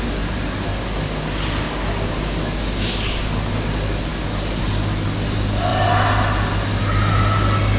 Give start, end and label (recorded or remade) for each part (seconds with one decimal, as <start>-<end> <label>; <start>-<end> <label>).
0.0-0.7 recorded; 0.7-3.6 remade; 3.6-4.1 recorded; 4.1-4.6 remade; 4.6-7.8 recorded